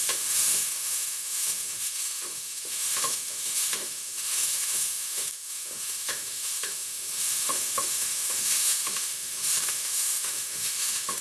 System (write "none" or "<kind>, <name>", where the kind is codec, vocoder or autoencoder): autoencoder, DAC-VAE